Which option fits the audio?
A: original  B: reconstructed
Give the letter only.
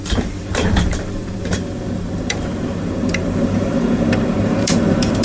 B